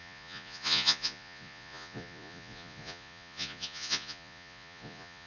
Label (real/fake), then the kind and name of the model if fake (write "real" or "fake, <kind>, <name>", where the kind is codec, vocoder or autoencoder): fake, vocoder, Vocos